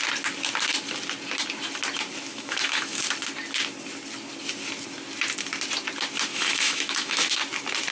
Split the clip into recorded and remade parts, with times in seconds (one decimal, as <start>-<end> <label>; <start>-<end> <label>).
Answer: 0.0-2.3 recorded; 2.3-3.0 remade; 3.0-6.3 recorded; 6.3-7.2 remade; 7.2-7.9 recorded